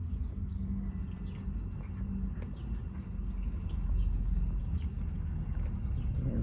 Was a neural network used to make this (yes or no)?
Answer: no